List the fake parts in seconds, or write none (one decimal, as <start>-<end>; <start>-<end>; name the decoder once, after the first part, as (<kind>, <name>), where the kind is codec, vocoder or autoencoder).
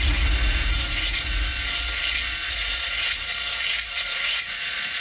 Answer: 0.0-1.5 (vocoder, Vocos); 2.5-3.3; 3.9-5.0